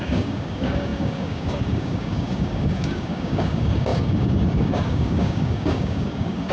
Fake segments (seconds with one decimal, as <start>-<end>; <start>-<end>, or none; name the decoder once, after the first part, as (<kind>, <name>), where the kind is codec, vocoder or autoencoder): 0.0-6.5 (codec, DAC)